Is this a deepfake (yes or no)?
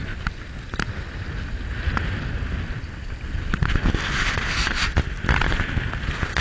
no